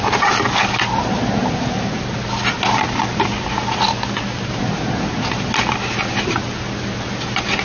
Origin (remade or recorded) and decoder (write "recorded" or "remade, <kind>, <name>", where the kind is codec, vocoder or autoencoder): recorded